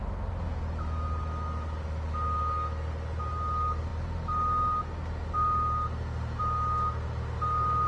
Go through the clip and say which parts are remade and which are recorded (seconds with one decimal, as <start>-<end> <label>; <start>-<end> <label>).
0.0-7.9 recorded